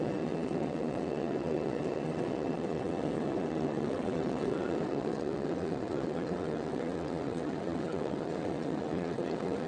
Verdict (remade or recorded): remade